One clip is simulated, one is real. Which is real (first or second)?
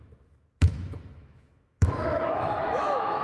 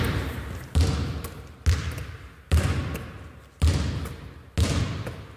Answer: second